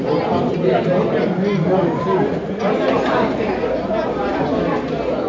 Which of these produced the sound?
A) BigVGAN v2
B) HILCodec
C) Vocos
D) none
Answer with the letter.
D